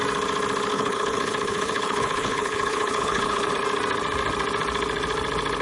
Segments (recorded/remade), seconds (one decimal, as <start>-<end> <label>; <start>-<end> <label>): 0.0-0.7 recorded; 0.7-3.5 remade; 3.5-5.6 recorded